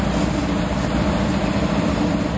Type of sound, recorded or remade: recorded